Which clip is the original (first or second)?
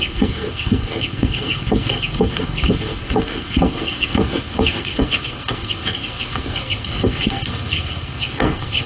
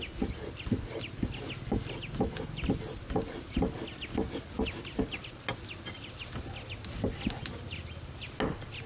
second